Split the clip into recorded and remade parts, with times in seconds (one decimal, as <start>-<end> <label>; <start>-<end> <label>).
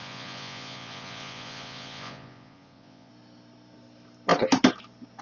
0.0-3.1 remade; 3.1-5.2 recorded